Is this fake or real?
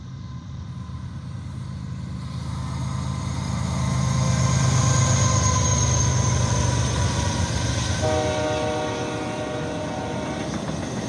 real